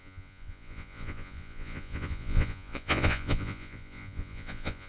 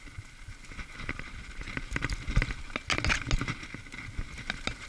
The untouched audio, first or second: second